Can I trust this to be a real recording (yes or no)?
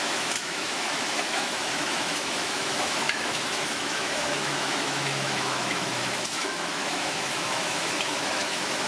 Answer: no